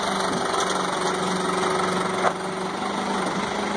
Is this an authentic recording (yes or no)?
yes